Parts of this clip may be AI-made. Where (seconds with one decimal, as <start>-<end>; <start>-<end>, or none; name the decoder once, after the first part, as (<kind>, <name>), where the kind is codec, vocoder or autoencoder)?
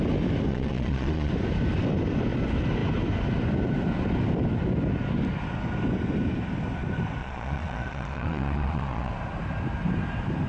0.5-1.3 (vocoder, Vocos); 7.2-9.1